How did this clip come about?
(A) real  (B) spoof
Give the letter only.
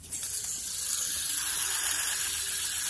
A